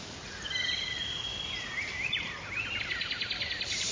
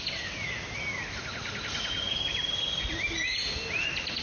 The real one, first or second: second